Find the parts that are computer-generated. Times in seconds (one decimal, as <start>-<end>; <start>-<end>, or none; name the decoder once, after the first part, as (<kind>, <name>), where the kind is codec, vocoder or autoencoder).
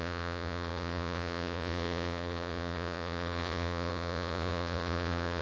0.0-5.4 (vocoder, Vocos)